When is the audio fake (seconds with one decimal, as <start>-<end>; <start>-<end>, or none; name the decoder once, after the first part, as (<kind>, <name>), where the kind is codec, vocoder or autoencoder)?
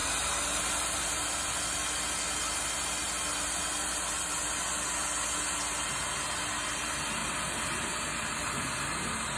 7.2-8.5 (vocoder, BigVGAN v2)